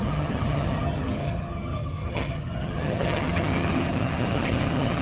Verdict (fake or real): fake